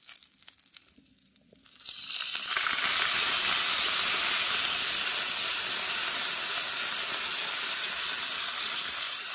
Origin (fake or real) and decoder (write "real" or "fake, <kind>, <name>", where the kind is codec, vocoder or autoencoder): real